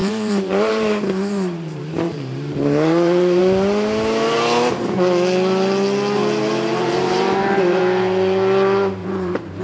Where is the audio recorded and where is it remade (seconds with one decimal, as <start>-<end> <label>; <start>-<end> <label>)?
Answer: 0.0-3.4 remade; 3.4-6.7 recorded; 6.7-7.8 remade; 7.8-9.0 recorded; 9.0-9.6 remade